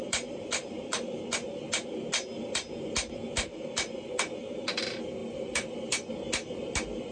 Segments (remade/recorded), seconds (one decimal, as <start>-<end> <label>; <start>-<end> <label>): 0.0-1.2 remade; 1.2-5.2 recorded; 5.2-5.9 remade; 5.9-7.1 recorded